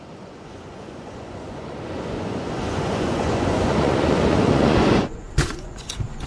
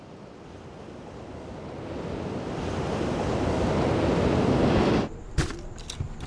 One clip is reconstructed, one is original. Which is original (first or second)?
second